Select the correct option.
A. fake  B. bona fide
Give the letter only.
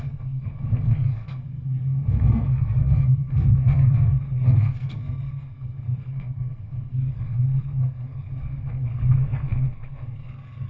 A